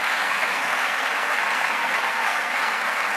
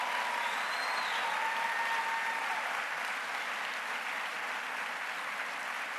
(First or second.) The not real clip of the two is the first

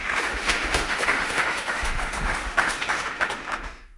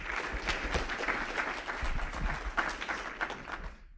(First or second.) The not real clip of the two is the first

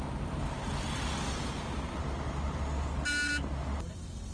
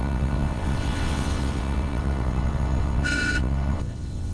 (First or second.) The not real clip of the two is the second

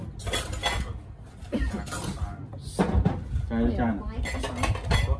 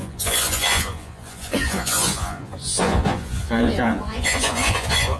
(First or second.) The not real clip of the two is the second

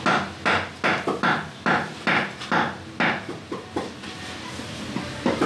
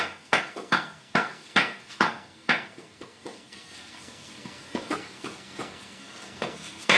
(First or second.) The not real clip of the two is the second